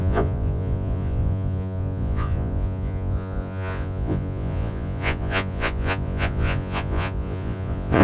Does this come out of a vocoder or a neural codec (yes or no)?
yes